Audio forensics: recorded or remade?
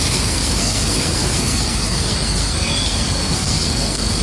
remade